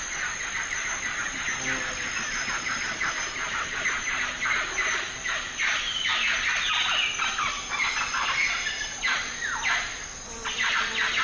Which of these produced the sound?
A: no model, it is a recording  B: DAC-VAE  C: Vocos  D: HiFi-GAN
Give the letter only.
A